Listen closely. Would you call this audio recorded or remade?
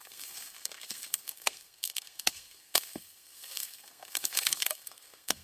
remade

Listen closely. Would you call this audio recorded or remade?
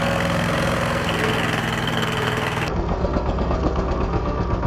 remade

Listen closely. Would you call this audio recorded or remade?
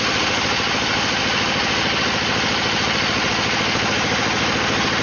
recorded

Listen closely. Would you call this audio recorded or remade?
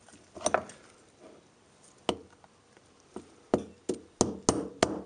recorded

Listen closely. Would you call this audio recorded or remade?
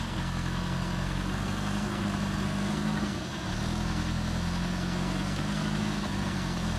remade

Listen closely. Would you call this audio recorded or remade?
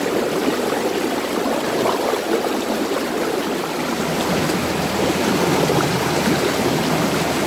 recorded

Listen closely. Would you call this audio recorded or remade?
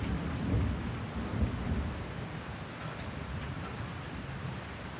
recorded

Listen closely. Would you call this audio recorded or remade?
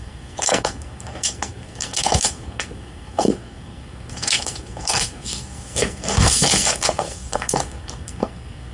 remade